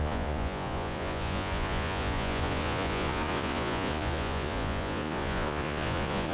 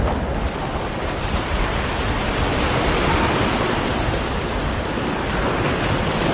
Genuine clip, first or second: second